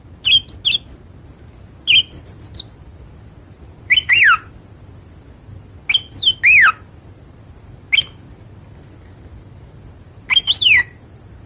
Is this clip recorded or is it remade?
recorded